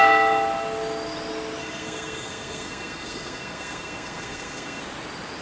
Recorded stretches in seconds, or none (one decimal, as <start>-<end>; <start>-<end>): 0.0-1.6; 4.8-5.4